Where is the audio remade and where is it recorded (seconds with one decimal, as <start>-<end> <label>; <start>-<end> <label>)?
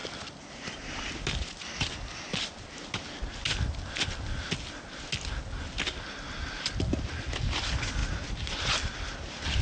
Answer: 0.0-0.9 remade; 0.9-8.0 recorded; 8.0-9.6 remade